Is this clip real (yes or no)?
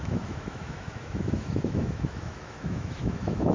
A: no